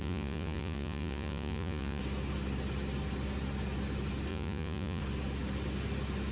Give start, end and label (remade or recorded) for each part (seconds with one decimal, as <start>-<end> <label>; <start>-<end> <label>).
0.0-2.0 remade; 2.0-4.3 recorded; 4.3-5.0 remade; 5.0-6.3 recorded